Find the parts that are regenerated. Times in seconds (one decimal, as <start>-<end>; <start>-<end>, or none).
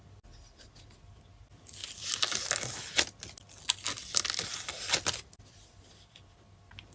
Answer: none